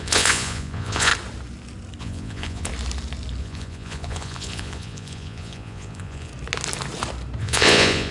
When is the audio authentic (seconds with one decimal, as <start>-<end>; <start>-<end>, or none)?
1.1-2.0; 2.7-3.4; 6.3-7.4